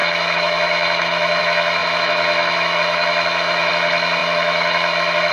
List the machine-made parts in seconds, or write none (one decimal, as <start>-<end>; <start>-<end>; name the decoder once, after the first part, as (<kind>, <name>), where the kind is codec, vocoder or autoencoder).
0.0-5.3 (autoencoder, DAC-VAE)